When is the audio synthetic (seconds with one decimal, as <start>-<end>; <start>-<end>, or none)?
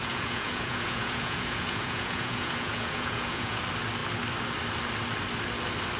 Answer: 0.0-3.6